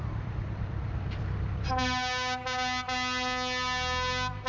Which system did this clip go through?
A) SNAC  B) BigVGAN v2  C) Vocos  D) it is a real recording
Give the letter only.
D